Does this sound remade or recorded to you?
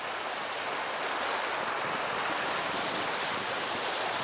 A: recorded